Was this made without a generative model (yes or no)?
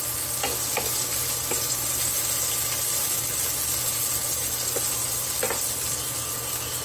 yes